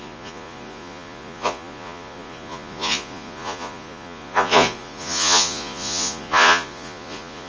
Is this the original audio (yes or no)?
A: no